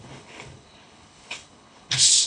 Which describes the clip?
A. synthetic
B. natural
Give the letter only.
A